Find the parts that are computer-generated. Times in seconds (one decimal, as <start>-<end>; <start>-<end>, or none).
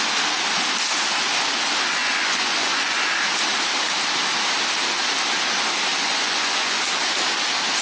2.0-3.0; 5.9-6.8